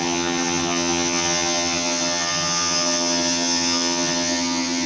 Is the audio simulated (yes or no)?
yes